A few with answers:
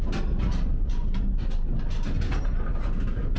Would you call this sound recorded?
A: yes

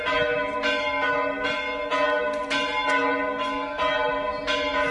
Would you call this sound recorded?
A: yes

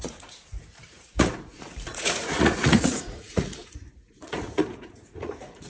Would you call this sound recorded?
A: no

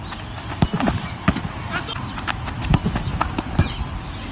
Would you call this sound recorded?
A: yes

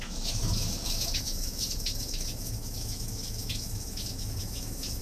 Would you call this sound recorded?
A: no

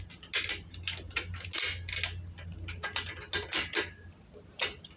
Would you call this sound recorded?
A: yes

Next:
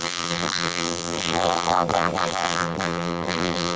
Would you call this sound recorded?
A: no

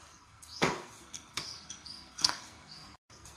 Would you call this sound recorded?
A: no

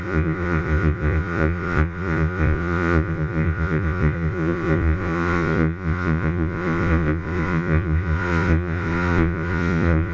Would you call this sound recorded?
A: no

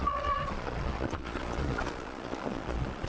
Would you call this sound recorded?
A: no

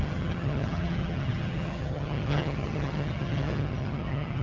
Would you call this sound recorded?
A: no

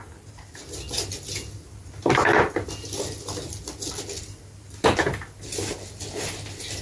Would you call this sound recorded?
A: yes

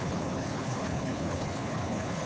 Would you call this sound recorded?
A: no